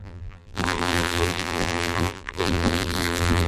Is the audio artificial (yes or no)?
yes